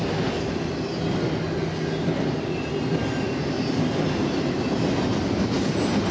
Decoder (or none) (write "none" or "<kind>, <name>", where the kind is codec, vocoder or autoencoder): none